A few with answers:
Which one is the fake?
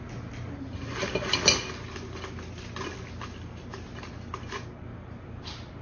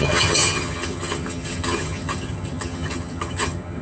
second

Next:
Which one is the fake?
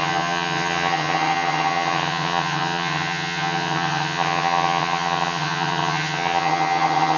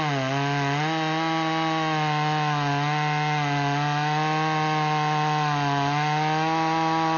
first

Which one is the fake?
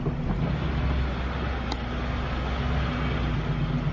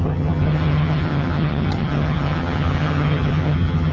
second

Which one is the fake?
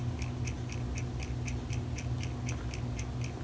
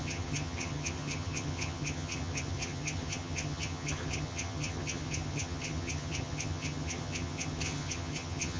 second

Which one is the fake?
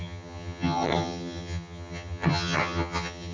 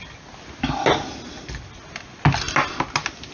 first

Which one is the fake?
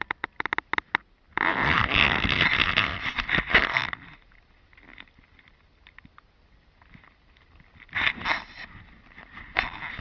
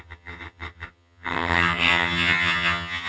second